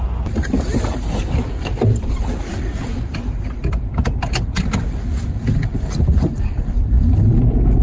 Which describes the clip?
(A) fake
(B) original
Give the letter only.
A